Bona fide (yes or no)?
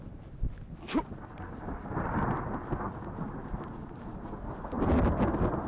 yes